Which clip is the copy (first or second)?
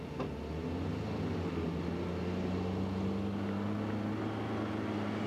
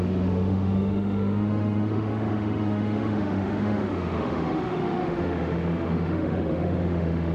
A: second